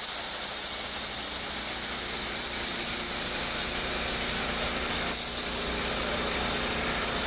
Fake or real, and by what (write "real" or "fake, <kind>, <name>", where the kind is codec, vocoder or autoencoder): real